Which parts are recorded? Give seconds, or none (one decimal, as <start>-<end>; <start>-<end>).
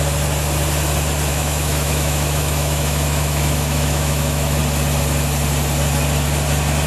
0.0-1.3; 4.6-6.9